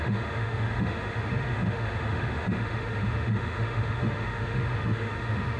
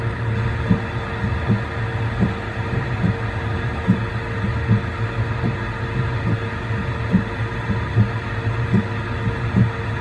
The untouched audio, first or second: second